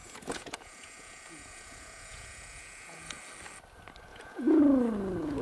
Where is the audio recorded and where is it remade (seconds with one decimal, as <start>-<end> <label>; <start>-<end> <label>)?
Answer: 0.0-3.2 remade; 3.2-4.1 recorded; 4.1-4.6 remade; 4.6-5.4 recorded